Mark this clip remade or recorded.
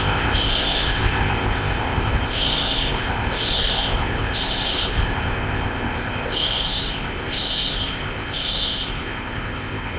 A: remade